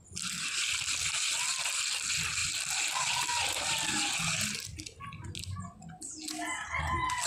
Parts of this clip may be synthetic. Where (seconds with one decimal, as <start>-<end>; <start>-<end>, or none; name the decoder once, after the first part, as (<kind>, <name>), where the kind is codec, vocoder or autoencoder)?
none